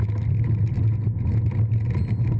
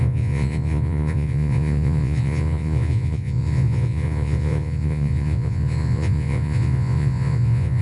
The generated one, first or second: second